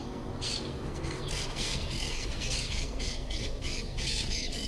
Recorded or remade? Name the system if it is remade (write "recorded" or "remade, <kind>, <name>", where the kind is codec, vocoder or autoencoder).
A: remade, codec, SNAC